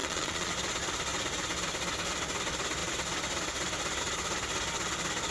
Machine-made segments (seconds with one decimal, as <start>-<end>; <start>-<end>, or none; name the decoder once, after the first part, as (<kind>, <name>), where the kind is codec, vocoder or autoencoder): 0.0-0.5 (vocoder, Vocos)